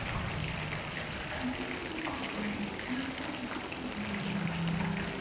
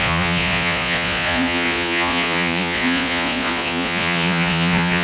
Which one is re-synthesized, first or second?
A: second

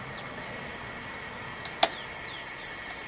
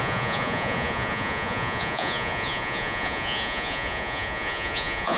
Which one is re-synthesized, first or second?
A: second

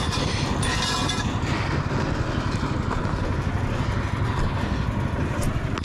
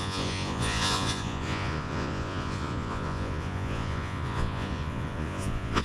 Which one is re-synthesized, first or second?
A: second